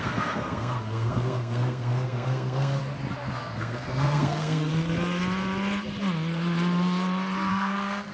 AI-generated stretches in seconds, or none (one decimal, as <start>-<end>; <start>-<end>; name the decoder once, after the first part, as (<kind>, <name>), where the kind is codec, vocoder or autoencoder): 0.0-2.8 (codec, SNAC); 3.3-4.7; 7.5-8.1